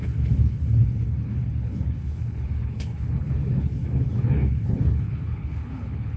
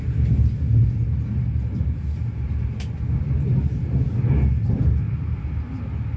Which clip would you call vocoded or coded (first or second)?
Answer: first